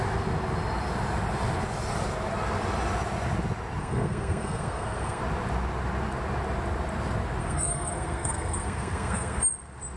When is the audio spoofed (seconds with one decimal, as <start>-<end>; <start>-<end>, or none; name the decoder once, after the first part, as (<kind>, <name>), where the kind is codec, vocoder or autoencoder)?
3.8-5.2 (codec, SNAC); 7.4-9.4